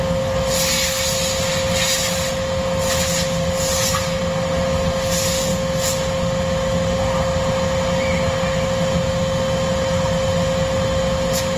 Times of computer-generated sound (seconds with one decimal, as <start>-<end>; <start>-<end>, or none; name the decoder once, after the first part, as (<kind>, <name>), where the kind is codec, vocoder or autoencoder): none